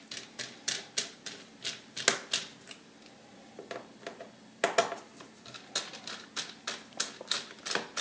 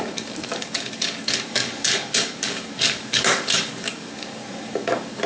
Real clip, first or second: first